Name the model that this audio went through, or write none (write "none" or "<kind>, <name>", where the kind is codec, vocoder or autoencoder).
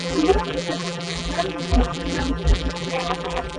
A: vocoder, BigVGAN v2